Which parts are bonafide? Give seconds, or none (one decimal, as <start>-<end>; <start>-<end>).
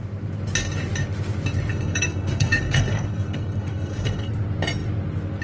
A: 0.0-1.7; 4.3-5.4